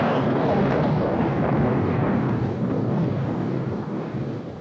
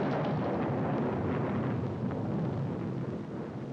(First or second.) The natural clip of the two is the second